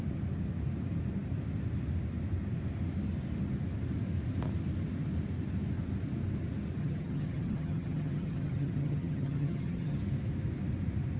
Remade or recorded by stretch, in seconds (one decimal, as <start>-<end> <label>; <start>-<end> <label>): 0.0-6.8 recorded; 6.8-10.0 remade; 10.0-11.2 recorded